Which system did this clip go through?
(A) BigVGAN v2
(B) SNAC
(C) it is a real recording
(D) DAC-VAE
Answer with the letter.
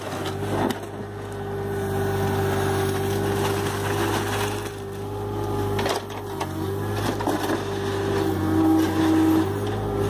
C